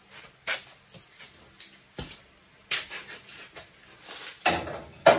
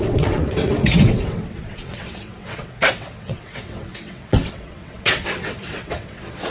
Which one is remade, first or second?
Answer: second